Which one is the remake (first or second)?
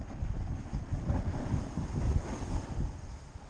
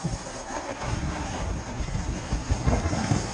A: second